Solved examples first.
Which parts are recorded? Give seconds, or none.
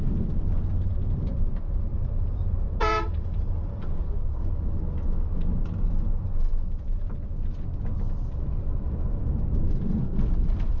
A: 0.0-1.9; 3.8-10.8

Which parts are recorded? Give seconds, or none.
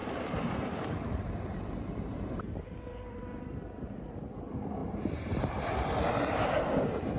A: 4.3-7.2